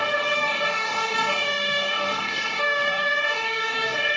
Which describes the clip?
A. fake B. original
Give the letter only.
A